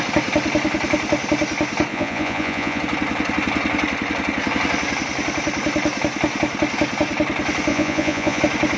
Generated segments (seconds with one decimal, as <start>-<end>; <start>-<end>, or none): 1.9-2.8; 7.7-8.4